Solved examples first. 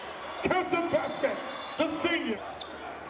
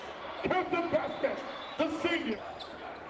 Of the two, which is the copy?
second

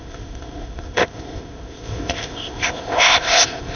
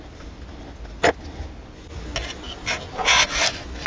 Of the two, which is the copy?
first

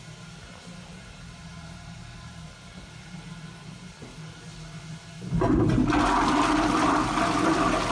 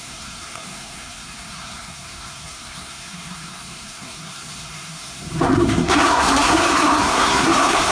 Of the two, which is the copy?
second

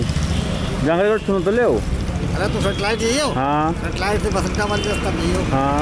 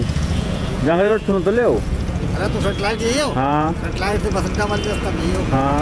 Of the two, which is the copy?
second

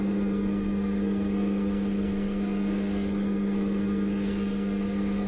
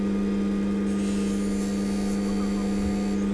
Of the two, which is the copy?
first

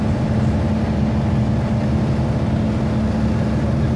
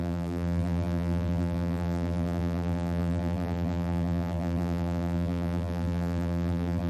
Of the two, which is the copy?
second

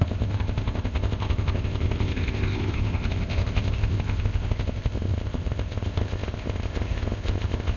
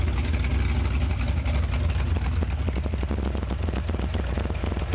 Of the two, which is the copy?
first